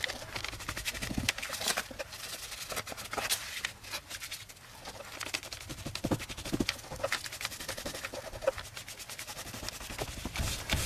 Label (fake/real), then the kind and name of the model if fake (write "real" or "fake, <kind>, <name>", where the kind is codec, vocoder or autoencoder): real